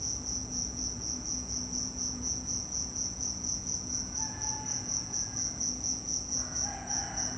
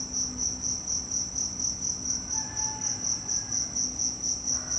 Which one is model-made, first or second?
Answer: first